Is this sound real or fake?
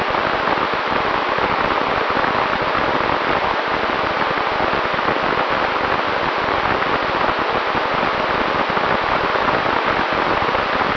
real